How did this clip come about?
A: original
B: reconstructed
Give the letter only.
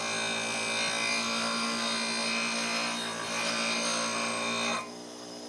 A